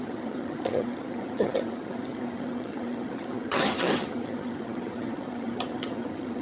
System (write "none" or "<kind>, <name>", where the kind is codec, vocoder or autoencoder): vocoder, HiFi-GAN